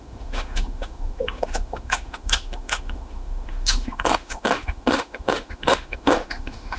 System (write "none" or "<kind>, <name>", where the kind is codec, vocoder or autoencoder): autoencoder, DAC-VAE